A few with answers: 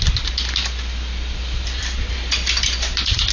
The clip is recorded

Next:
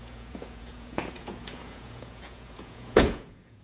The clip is remade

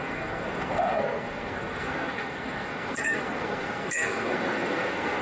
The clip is remade